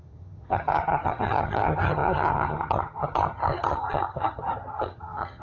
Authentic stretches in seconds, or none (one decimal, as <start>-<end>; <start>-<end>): none